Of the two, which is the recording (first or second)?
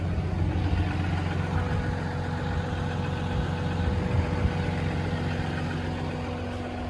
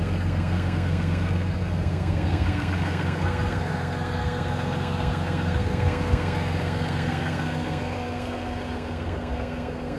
first